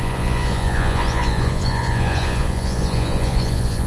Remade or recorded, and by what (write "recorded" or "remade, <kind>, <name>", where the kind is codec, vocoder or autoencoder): remade, vocoder, Vocos